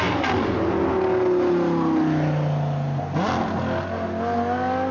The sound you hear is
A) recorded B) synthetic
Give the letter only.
A